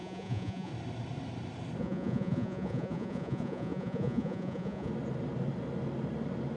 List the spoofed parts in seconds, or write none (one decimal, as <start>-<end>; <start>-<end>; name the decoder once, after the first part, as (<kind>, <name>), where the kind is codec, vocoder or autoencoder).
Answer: 0.0-0.7 (vocoder, Vocos); 1.8-4.9